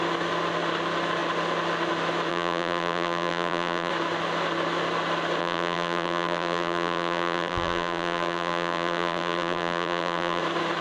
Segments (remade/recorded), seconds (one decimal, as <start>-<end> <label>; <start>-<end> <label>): 0.0-2.3 recorded; 2.3-3.9 remade; 3.9-5.4 recorded; 5.4-10.4 remade; 10.4-10.8 recorded